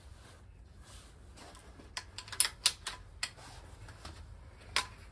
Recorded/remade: recorded